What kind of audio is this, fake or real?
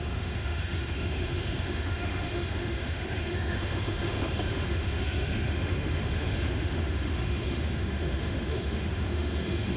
fake